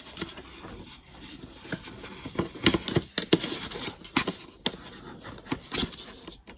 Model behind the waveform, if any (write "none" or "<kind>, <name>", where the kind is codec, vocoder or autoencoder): none